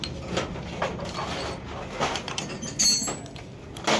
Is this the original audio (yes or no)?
yes